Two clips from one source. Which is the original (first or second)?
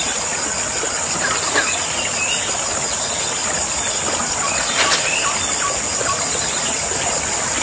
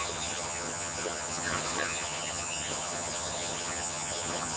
first